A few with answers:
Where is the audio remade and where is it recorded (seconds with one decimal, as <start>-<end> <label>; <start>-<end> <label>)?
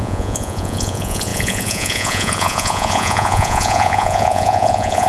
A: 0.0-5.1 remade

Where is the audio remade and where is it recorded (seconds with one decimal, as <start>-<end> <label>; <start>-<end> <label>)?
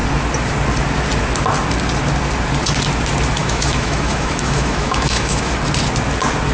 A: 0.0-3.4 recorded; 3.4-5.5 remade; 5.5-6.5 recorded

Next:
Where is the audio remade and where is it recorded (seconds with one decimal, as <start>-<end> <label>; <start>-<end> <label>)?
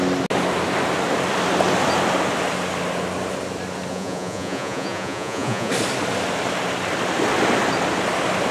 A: 0.0-3.9 recorded; 3.9-5.7 remade; 5.7-8.5 recorded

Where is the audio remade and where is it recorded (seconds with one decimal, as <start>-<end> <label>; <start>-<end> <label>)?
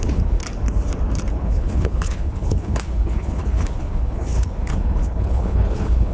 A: 0.0-0.4 remade; 0.4-1.3 recorded; 1.3-6.1 remade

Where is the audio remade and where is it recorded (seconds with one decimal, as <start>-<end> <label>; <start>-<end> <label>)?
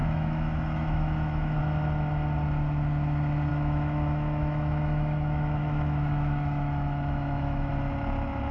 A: 0.0-1.6 remade; 1.6-3.5 recorded; 3.5-7.7 remade; 7.7-8.5 recorded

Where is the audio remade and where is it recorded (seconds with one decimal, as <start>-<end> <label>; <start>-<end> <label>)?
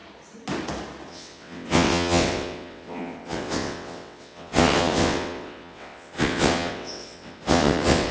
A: 0.0-1.1 recorded; 1.1-8.1 remade